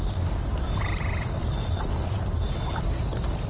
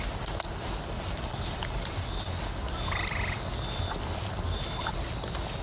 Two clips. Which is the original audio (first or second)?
second